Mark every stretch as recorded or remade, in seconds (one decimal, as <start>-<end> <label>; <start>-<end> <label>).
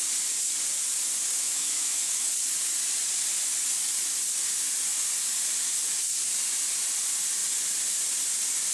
0.0-1.4 recorded; 1.4-2.3 remade; 2.3-8.7 recorded